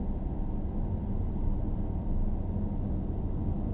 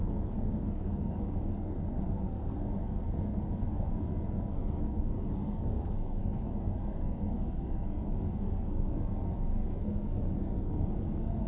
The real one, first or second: first